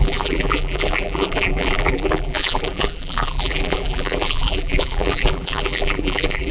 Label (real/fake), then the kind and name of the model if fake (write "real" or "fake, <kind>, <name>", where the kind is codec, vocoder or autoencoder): fake, vocoder, BigVGAN v2